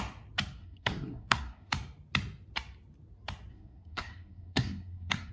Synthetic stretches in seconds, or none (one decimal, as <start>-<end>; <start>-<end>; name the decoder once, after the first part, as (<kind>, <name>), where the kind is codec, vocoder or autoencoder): 0.6-1.7 (codec, SNAC); 3.5-5.3